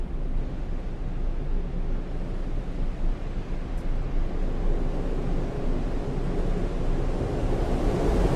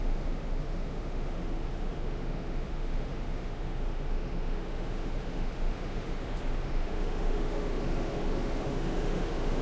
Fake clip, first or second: second